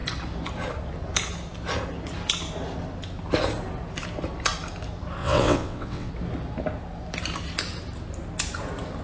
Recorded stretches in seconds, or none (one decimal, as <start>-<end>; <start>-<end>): 0.0-5.2; 6.1-9.0